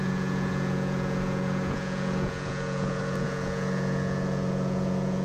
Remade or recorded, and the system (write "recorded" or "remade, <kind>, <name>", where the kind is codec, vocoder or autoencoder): remade, vocoder, Vocos